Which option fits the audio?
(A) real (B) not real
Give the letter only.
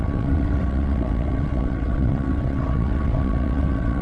B